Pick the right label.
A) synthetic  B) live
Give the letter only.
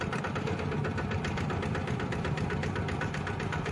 B